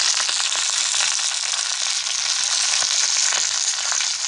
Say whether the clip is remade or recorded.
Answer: recorded